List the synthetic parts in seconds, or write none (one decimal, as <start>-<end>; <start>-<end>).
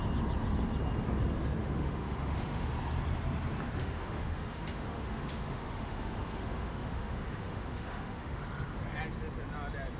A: 1.6-2.7; 3.8-8.4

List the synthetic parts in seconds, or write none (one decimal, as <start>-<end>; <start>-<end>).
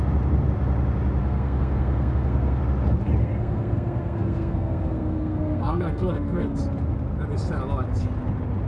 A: 1.2-2.6; 3.2-6.6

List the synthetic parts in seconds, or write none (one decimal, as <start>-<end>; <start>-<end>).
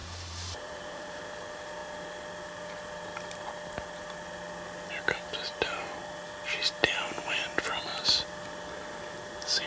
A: 0.0-1.2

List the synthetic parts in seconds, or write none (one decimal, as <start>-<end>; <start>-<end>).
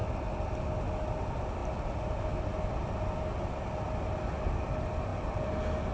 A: none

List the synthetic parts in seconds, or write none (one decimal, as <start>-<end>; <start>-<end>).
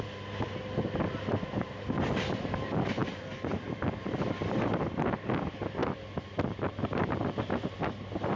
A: none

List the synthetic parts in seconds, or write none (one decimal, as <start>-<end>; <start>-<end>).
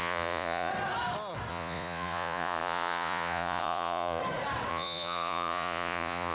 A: 0.0-0.7; 1.5-4.2; 4.7-6.3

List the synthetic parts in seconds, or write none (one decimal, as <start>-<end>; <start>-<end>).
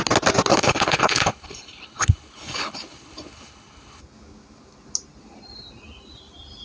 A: 0.5-4.0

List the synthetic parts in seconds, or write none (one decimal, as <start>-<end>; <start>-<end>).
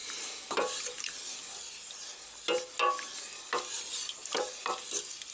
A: none